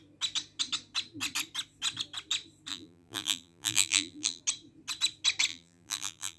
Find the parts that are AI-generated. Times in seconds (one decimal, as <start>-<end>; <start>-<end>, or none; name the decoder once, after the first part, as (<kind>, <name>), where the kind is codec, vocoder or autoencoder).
2.7-4.4 (vocoder, BigVGAN v2); 5.5-6.4

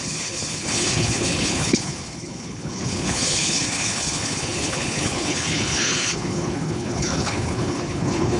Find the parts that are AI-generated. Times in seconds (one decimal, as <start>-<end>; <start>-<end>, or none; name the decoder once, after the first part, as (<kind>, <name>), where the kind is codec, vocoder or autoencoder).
0.0-8.4 (codec, HILCodec)

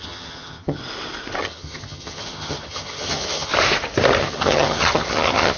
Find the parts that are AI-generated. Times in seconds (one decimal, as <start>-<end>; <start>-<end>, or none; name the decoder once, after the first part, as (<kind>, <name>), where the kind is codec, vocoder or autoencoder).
0.0-0.8 (vocoder, HiFi-GAN); 1.4-3.5; 4.2-5.6

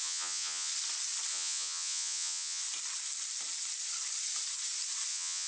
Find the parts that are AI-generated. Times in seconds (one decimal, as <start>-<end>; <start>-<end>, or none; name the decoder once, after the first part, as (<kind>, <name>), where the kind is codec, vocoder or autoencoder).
0.0-0.7 (vocoder, Vocos); 1.3-2.6; 5.1-5.5

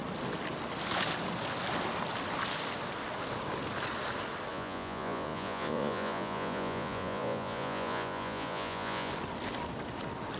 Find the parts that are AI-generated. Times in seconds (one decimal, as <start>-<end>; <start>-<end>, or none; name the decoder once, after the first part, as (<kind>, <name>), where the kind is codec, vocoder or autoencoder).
4.5-9.1 (vocoder, Vocos)

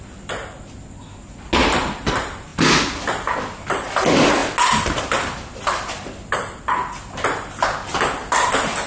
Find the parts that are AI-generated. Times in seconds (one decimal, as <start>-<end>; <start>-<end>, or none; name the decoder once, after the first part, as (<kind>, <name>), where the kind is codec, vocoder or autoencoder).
none

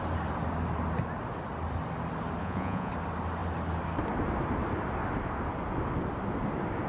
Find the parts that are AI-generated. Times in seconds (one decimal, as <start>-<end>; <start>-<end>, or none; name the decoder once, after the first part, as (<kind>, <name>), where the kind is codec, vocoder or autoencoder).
2.4-2.9 (vocoder, Vocos)